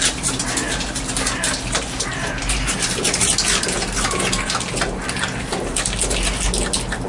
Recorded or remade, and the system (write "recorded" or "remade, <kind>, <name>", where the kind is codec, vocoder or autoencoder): recorded